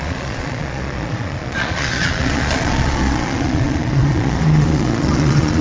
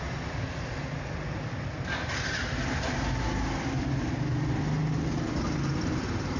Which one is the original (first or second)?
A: second